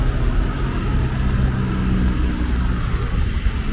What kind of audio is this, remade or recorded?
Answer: recorded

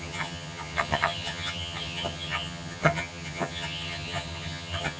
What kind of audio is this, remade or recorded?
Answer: remade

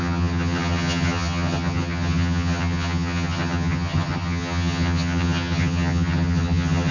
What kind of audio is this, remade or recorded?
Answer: remade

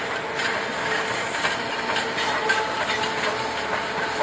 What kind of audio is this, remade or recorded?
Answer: recorded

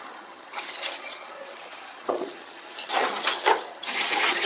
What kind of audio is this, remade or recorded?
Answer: remade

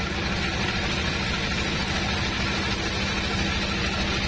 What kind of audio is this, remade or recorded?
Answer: recorded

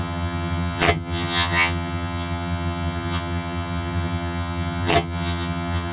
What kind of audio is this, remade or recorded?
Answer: remade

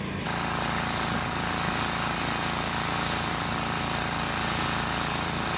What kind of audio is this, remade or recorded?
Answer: recorded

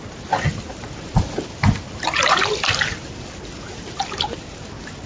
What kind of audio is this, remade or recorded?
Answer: recorded